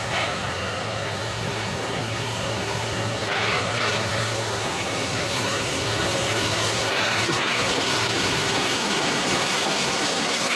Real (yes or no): no